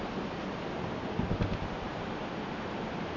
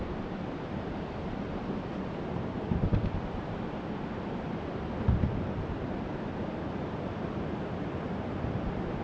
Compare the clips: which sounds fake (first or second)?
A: second